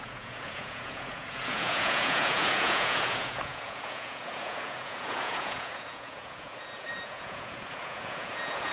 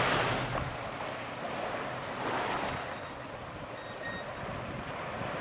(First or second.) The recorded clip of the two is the second